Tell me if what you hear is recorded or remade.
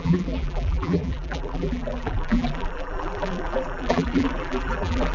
remade